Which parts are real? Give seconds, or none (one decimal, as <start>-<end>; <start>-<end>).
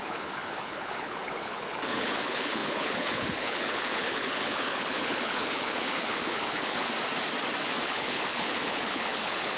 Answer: 6.9-7.8